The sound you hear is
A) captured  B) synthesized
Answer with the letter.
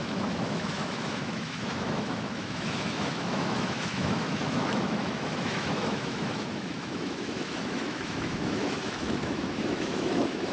B